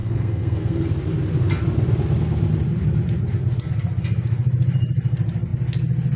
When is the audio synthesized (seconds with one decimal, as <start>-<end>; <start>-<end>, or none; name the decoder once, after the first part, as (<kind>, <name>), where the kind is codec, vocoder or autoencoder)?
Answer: 0.0-0.9 (codec, SNAC)